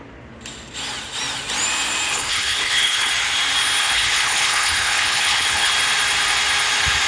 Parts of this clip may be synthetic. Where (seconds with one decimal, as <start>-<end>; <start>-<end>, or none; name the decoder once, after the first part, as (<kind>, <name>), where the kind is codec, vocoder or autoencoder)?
2.1-3.1 (codec, HILCodec); 3.8-5.7